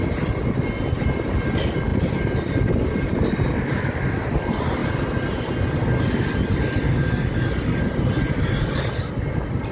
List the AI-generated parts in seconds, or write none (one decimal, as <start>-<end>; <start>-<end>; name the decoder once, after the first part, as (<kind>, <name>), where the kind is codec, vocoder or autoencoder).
none